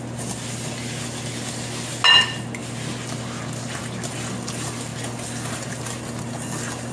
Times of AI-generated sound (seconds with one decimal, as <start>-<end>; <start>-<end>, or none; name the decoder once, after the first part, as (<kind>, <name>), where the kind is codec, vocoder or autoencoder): none

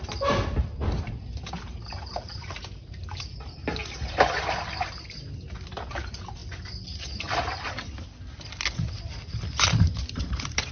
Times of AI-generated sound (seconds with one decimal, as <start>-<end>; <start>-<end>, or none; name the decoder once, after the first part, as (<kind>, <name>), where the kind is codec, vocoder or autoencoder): 0.0-3.0 (vocoder, BigVGAN v2); 5.9-6.4; 9.8-10.7

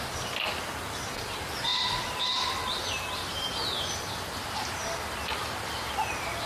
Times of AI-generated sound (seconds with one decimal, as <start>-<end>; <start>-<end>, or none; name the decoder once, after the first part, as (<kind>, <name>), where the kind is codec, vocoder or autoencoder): 5.4-6.1 (vocoder, BigVGAN v2)

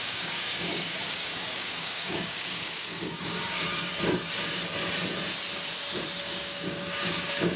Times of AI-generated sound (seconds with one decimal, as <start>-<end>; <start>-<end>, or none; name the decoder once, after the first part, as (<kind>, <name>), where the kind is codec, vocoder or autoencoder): 0.0-3.7 (codec, DAC); 6.2-7.6

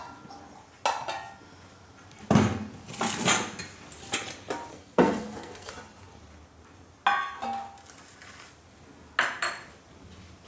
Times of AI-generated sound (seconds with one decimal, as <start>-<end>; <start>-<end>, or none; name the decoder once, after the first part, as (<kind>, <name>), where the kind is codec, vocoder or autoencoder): 4.7-5.7 (codec, SNAC)

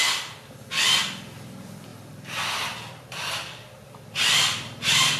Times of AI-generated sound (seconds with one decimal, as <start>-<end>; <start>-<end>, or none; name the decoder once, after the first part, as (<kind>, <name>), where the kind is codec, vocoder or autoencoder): 1.9-5.2 (vocoder, BigVGAN v2)

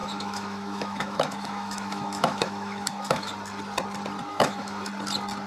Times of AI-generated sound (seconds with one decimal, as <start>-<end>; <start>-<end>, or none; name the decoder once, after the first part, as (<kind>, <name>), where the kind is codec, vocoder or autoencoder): 0.0-3.3 (autoencoder, DAC-VAE); 4.3-4.9

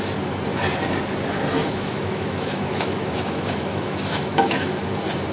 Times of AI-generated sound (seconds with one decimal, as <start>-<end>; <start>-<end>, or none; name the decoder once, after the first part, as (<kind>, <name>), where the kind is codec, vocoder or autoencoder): 1.6-4.8 (autoencoder, DAC-VAE)